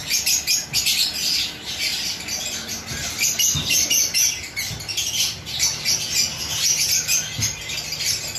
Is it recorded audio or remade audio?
recorded